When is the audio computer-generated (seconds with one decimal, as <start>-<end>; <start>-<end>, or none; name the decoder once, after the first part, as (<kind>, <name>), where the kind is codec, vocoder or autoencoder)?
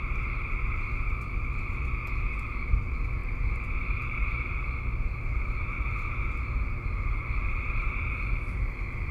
0.0-9.1 (vocoder, BigVGAN v2)